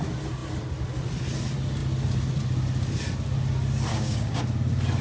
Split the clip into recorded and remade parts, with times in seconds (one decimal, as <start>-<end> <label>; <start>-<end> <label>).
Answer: 0.0-3.9 recorded; 3.9-4.4 remade; 4.4-5.0 recorded